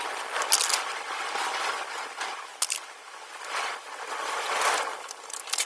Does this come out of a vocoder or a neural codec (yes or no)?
no